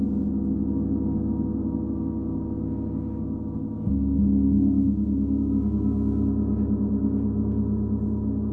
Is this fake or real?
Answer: real